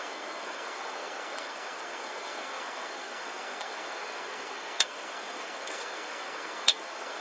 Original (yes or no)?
no